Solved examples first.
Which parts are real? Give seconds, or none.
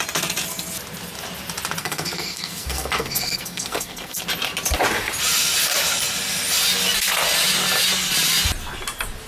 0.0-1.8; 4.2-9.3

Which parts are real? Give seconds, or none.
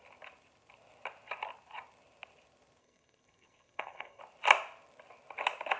0.0-2.8; 4.2-5.8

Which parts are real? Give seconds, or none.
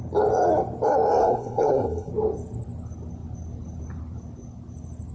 0.0-1.2; 2.1-5.1